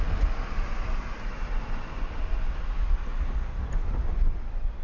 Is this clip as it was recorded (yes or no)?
yes